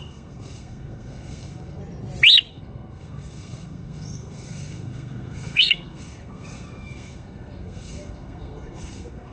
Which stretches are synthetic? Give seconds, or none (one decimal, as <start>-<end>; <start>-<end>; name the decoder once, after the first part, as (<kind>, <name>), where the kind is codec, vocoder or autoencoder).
0.0-1.8 (codec, SNAC); 2.5-9.3